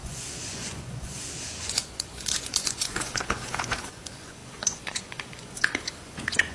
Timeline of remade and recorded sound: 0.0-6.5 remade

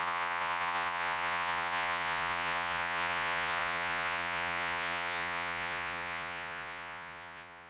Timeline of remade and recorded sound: 0.0-7.7 remade

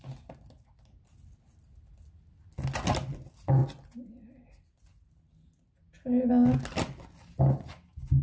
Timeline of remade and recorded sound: 0.0-8.2 recorded

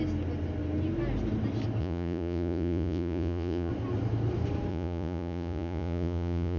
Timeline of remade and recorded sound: 0.0-1.8 recorded; 1.8-3.7 remade; 3.7-4.7 recorded; 4.7-6.6 remade

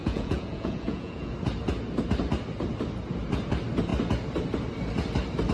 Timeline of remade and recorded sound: 0.0-1.3 remade; 1.3-5.5 recorded